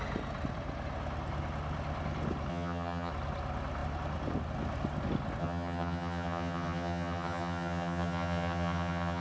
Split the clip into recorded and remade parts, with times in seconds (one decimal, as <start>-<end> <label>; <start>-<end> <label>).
0.0-2.5 recorded; 2.5-3.1 remade; 3.1-5.4 recorded; 5.4-9.2 remade